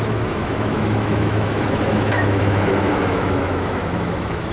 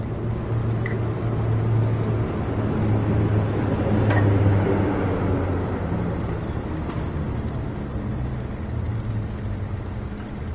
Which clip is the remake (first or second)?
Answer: first